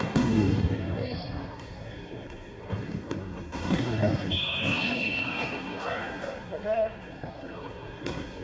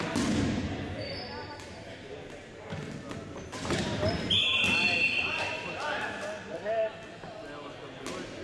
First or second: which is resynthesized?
first